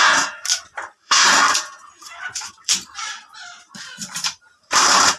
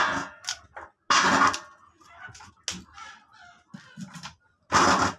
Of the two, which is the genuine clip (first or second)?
second